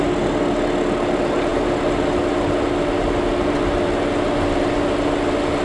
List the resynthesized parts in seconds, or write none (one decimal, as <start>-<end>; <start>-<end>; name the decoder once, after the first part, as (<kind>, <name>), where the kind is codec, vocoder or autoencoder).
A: none